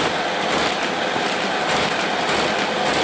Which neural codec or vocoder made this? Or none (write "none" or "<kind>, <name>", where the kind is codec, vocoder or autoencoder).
none